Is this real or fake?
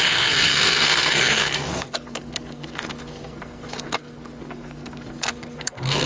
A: fake